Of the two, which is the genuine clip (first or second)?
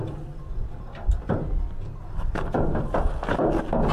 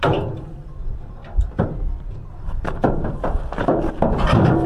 first